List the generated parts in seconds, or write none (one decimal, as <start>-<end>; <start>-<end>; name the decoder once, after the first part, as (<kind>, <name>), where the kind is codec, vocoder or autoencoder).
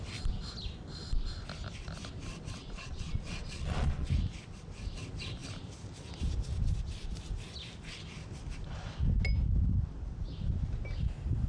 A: 2.6-4.1 (vocoder, Vocos)